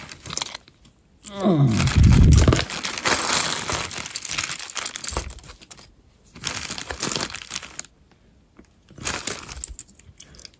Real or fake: real